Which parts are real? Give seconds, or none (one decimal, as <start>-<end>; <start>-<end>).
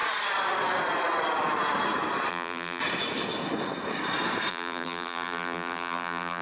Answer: 0.0-2.3; 2.8-4.5